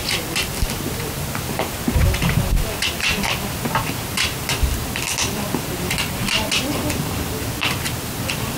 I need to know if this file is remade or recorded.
recorded